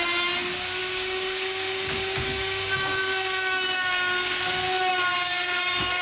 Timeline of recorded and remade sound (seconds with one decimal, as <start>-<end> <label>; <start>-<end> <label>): 0.0-0.8 recorded; 0.8-4.4 remade; 4.4-4.9 recorded; 4.9-6.0 remade